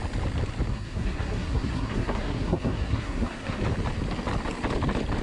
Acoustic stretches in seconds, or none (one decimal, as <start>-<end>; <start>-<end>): 0.0-0.7; 3.6-5.2